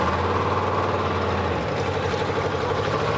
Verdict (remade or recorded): recorded